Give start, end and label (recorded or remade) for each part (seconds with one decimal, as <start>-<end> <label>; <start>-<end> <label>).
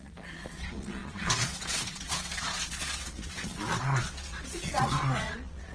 0.0-5.7 remade